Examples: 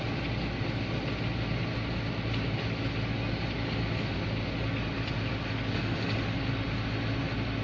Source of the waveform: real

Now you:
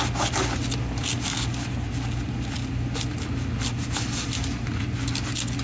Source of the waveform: real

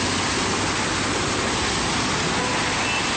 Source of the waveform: real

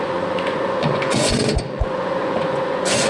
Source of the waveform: fake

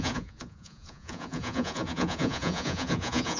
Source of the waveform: fake